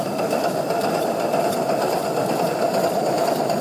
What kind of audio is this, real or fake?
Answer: real